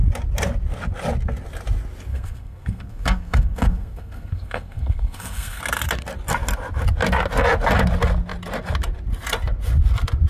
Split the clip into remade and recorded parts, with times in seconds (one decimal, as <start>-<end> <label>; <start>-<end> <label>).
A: 0.0-2.1 recorded; 2.1-5.6 remade; 5.6-10.3 recorded

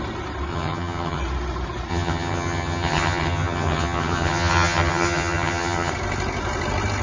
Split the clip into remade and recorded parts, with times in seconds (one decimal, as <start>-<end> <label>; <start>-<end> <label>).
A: 0.0-0.5 recorded; 0.5-1.2 remade; 1.2-1.9 recorded; 1.9-5.9 remade; 5.9-7.0 recorded